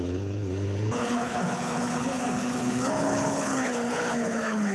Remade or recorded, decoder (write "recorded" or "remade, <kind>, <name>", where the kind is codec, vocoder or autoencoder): remade, codec, HILCodec